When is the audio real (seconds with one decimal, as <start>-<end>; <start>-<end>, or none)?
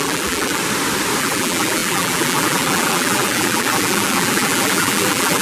0.6-1.2